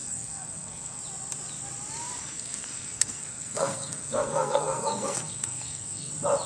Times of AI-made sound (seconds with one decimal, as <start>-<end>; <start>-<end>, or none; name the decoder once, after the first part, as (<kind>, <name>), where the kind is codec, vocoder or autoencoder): 0.0-1.0 (codec, SNAC); 2.2-6.1